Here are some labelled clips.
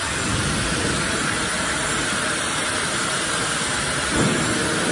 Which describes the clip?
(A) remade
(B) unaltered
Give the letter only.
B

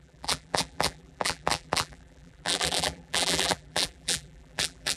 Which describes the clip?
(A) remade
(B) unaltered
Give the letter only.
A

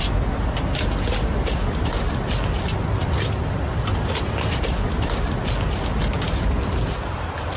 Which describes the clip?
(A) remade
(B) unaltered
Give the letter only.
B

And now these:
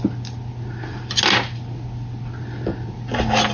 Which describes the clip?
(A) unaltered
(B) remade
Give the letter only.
A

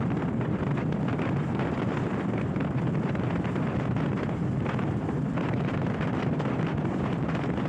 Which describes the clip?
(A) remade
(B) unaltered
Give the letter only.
B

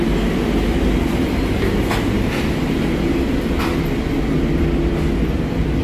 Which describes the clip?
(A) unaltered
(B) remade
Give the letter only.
A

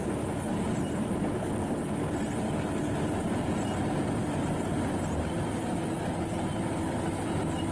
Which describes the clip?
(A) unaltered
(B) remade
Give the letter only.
A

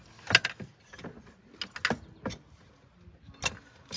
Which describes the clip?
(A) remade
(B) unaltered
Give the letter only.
B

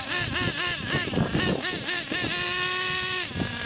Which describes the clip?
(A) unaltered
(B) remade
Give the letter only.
A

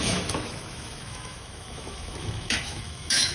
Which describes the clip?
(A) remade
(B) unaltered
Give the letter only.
A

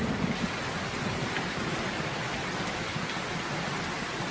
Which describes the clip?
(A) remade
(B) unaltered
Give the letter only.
B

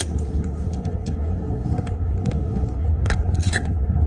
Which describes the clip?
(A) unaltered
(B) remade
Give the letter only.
B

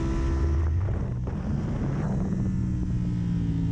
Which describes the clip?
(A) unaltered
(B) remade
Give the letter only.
A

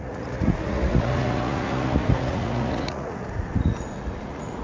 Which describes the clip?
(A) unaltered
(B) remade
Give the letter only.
B